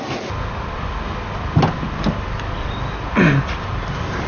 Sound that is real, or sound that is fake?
real